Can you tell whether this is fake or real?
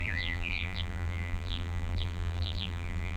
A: fake